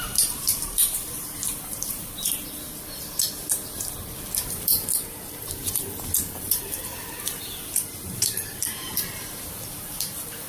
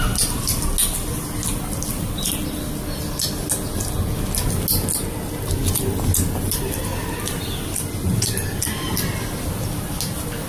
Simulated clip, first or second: first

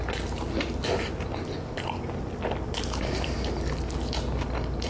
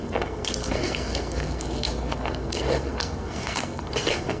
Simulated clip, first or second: second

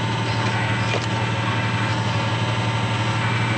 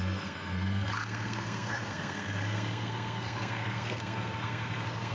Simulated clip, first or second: second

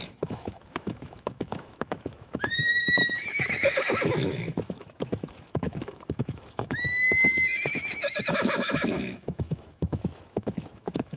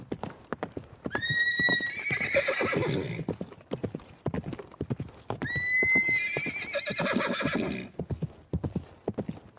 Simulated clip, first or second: first